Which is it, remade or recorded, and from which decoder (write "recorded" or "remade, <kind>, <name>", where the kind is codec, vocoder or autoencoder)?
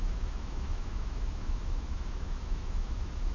remade, autoencoder, DAC-VAE